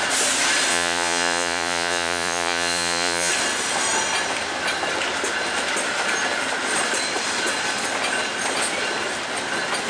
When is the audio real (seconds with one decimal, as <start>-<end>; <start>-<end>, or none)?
0.0-0.7; 3.3-9.9